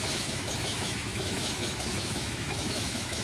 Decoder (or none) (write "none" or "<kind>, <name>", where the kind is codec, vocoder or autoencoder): autoencoder, DAC-VAE